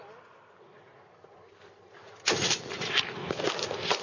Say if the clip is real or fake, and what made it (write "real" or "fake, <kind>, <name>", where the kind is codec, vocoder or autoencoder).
real